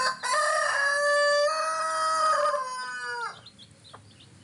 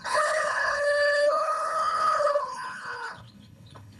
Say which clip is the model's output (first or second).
second